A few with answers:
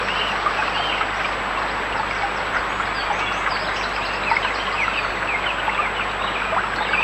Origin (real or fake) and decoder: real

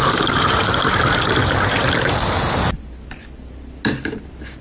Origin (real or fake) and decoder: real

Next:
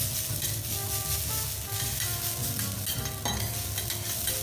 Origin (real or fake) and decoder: real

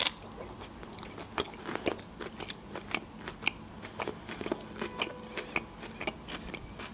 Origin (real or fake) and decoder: real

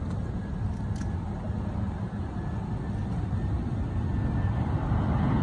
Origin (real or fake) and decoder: real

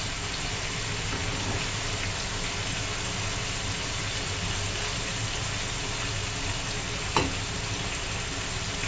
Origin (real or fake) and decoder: real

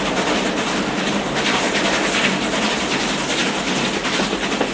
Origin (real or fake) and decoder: real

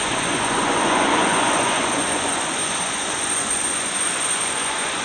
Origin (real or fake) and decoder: fake, vocoder, Vocos